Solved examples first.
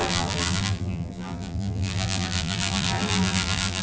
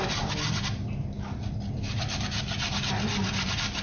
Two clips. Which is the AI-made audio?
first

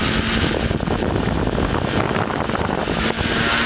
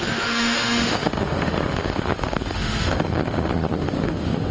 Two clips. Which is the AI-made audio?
second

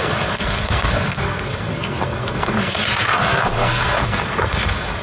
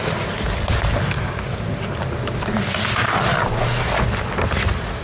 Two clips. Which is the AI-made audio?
first